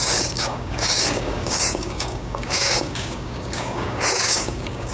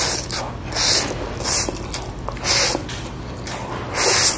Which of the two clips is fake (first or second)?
first